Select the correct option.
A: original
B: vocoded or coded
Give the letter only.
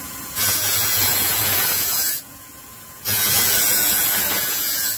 B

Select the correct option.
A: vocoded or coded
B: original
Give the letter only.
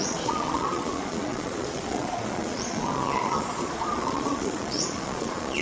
A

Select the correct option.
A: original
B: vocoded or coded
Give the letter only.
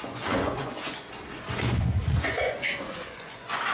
B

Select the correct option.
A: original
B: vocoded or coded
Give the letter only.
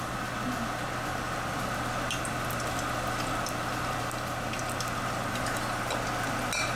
A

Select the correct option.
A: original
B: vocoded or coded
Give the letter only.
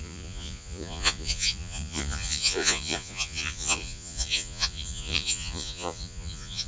B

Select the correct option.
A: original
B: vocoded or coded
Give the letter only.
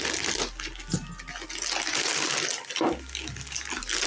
A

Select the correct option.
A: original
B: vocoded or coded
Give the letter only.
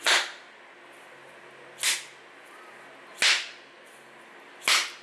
A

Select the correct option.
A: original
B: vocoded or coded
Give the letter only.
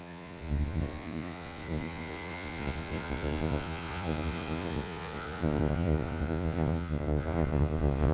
B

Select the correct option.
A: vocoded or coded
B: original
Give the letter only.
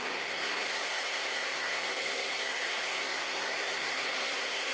A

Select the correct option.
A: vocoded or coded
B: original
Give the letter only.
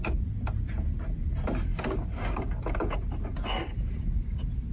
B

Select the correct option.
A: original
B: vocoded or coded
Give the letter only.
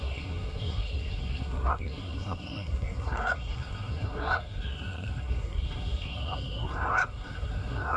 B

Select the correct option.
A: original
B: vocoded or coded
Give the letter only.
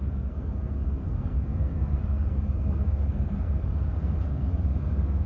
B